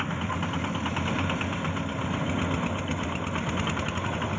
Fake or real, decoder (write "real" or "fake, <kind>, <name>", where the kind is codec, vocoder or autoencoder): real